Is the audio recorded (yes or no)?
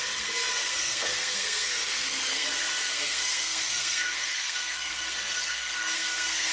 no